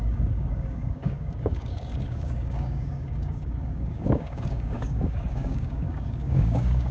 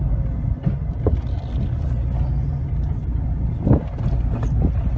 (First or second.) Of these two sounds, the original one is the second